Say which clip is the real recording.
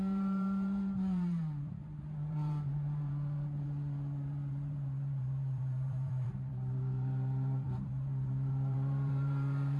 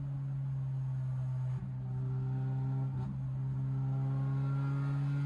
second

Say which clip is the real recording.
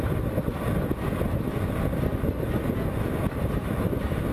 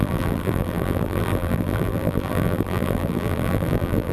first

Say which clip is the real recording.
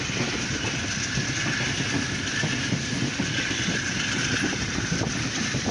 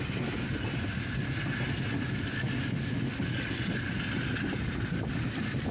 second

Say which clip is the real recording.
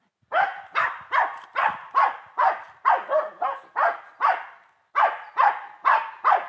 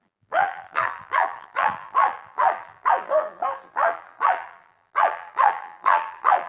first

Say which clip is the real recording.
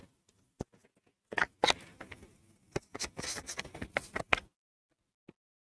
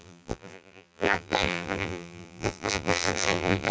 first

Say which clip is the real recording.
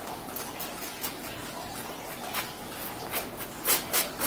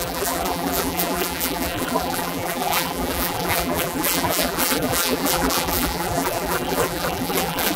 first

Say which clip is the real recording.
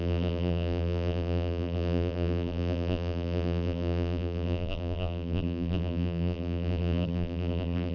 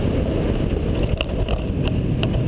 second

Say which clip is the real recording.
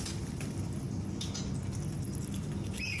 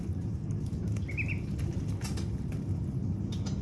first